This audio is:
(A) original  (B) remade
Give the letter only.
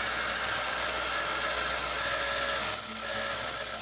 A